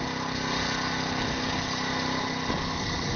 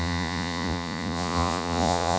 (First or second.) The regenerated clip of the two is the second